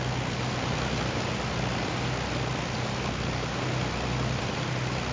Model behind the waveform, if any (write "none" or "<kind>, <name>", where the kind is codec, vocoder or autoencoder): none